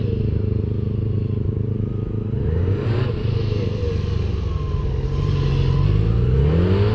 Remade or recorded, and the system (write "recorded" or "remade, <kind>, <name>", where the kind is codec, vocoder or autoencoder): recorded